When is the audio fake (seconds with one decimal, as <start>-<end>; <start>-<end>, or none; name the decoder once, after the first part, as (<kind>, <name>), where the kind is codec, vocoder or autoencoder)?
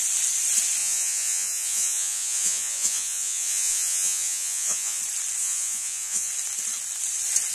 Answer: 0.8-5.0 (vocoder, Vocos); 5.4-6.3